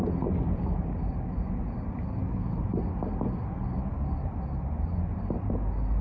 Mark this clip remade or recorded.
recorded